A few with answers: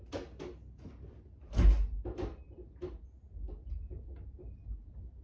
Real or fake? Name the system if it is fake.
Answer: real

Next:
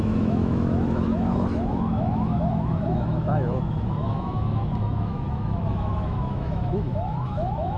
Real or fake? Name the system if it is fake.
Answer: fake, autoencoder, DAC-VAE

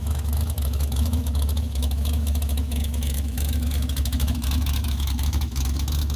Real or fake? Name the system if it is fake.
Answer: fake, autoencoder, DAC-VAE